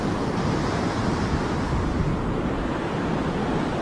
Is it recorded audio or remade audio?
recorded